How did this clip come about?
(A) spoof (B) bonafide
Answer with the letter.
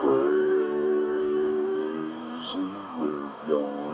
A